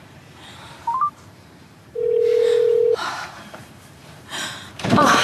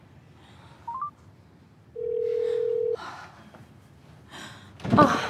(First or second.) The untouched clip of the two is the second